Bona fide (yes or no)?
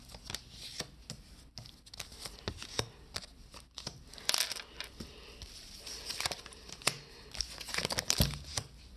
yes